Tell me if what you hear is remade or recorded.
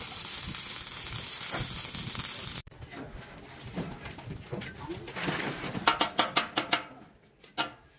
recorded